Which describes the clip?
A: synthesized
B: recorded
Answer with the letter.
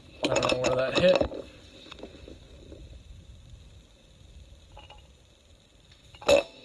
B